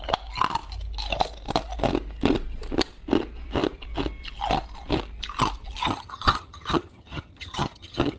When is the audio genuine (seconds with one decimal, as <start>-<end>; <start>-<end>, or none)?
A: 0.0-5.8

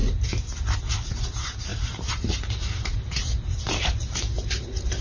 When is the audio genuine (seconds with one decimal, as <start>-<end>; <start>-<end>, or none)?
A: 0.0-1.1